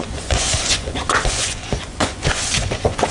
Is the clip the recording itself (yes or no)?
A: no